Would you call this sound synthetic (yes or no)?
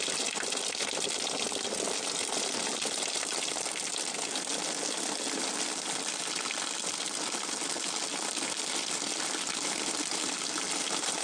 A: no